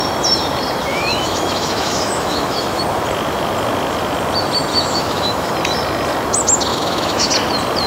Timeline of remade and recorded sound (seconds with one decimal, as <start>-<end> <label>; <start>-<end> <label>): 0.0-0.9 recorded; 0.9-2.8 remade; 2.8-4.7 recorded; 4.7-5.5 remade; 5.5-6.7 recorded; 6.7-7.3 remade; 7.3-7.9 recorded